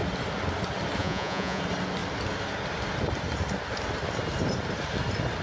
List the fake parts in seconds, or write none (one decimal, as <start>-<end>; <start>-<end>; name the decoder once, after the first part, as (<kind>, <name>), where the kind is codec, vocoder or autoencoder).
1.0-1.6 (vocoder, Vocos)